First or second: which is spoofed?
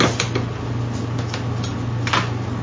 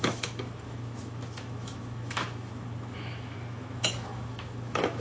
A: second